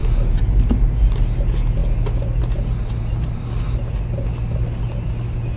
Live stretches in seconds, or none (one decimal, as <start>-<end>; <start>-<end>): 0.0-5.6